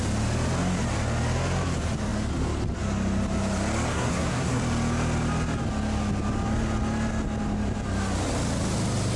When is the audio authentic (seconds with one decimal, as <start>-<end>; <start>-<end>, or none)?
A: 0.0-3.9; 4.6-9.2